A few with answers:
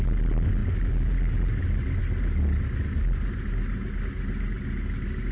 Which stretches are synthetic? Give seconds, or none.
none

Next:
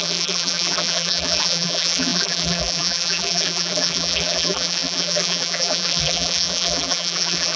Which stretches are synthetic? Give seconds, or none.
0.0-7.6 (vocoder, BigVGAN v2)

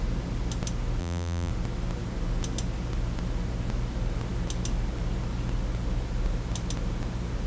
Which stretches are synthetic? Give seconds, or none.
1.0-1.5 (vocoder, BigVGAN v2)

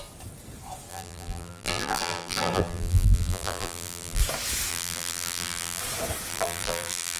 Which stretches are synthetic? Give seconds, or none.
0.9-4.2 (vocoder, BigVGAN v2); 4.7-5.8; 6.3-7.2

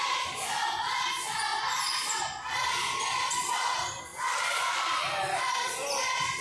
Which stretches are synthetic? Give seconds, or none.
1.5-3.5 (vocoder, BigVGAN v2); 4.1-6.4

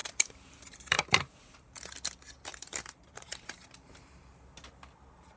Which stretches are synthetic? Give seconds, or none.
0.0-1.8 (vocoder, BigVGAN v2); 2.5-4.2